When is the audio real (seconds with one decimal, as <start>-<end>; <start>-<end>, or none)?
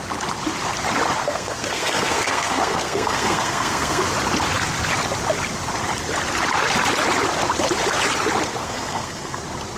0.0-1.2; 4.1-8.6; 9.4-9.8